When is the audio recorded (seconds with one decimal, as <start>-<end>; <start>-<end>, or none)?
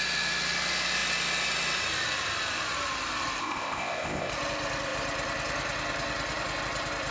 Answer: 0.0-3.4; 4.3-7.1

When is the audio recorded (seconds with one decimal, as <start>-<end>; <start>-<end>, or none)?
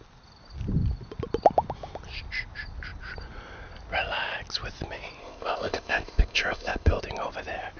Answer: 0.0-5.2; 7.0-7.8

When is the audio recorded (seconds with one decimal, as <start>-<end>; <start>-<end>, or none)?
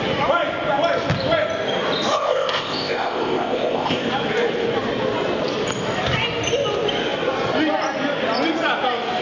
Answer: 0.0-2.1; 4.1-9.2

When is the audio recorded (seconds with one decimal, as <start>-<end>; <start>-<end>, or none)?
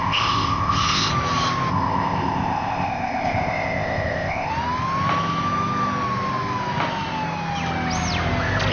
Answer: 1.1-1.7; 4.5-8.7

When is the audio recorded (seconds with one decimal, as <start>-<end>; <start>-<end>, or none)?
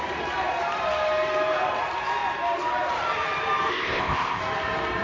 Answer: 0.0-3.7; 4.4-5.0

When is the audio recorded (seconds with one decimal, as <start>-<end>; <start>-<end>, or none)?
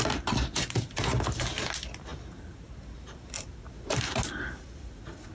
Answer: 0.0-5.3